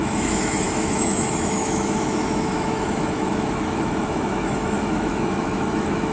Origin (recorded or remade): remade